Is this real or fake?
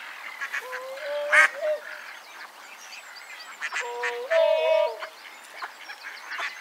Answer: real